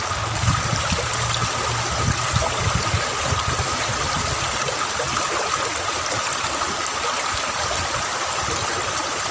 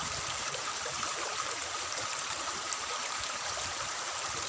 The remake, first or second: second